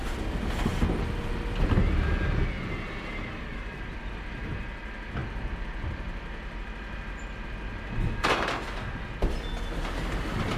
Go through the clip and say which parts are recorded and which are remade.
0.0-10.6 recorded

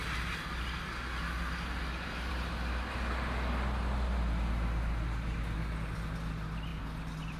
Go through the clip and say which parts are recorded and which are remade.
0.0-7.4 recorded

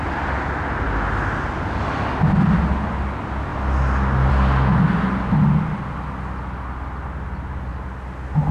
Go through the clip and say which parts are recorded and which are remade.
0.0-8.5 recorded